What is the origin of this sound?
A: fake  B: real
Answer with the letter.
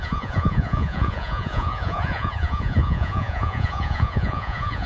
A